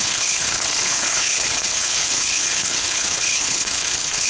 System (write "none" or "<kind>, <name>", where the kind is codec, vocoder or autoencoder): codec, HILCodec